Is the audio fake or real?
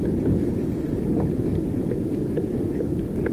fake